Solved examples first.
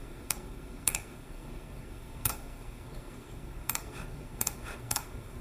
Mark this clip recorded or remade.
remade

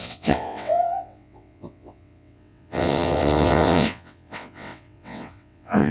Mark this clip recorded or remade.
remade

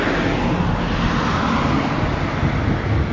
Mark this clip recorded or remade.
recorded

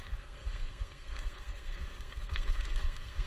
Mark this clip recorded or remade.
remade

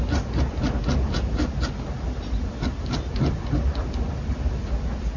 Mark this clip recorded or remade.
recorded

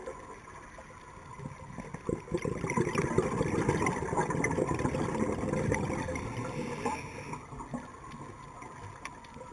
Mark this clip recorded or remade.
recorded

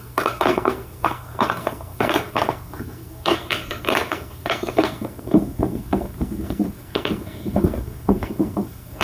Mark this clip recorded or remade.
remade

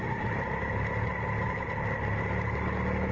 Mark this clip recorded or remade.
recorded